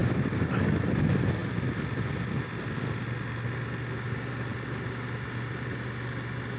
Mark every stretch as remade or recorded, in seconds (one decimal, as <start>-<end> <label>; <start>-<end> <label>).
0.0-0.6 remade; 0.6-6.6 recorded